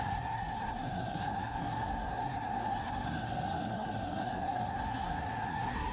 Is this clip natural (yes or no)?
no